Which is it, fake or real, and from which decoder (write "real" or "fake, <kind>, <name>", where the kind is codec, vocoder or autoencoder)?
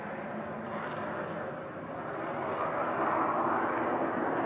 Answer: real